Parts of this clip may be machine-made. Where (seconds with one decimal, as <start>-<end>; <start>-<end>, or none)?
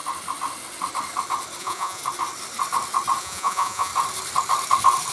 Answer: 1.6-2.0; 3.2-3.9